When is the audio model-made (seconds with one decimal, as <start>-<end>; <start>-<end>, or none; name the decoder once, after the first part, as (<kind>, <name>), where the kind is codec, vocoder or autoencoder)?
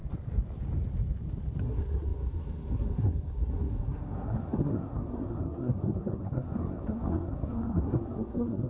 1.6-8.7 (codec, SNAC)